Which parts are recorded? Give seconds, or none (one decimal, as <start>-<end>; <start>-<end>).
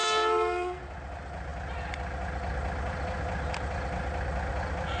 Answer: 0.8-5.0